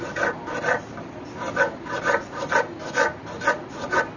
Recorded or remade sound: recorded